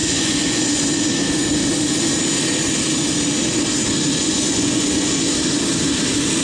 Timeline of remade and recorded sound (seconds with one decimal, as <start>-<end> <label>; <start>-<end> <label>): 0.0-0.6 remade; 0.6-4.2 recorded; 4.2-5.3 remade; 5.3-6.4 recorded